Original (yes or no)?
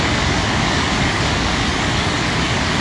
no